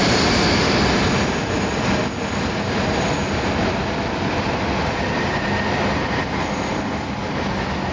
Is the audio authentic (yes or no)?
yes